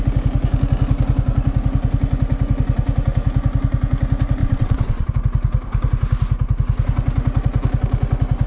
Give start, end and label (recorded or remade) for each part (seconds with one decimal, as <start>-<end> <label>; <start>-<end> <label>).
0.0-4.4 recorded; 4.4-5.1 remade; 5.1-8.5 recorded